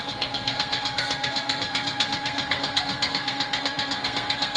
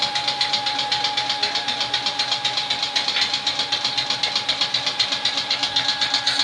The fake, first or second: first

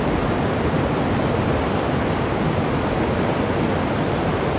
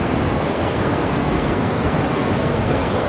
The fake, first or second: second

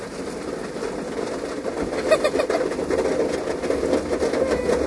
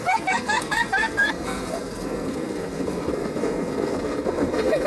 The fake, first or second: second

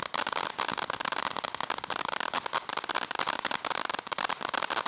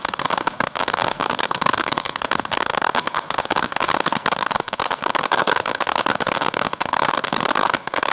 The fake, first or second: second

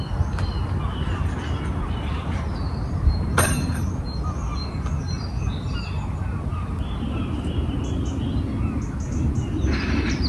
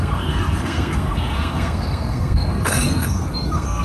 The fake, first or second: second